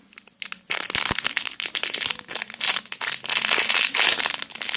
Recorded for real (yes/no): yes